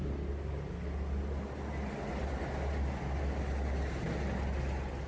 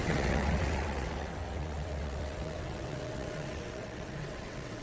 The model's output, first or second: second